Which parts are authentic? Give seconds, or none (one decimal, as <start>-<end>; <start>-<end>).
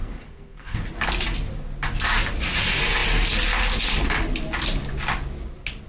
0.8-5.9